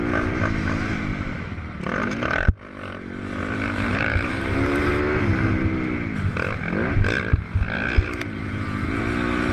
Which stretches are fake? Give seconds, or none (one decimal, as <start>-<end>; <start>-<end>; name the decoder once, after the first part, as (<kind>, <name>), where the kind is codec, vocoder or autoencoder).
3.9-4.9 (vocoder, BigVGAN v2)